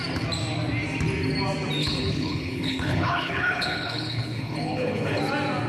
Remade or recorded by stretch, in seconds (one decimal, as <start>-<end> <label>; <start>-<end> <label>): 0.0-1.8 recorded; 1.8-5.2 remade; 5.2-5.7 recorded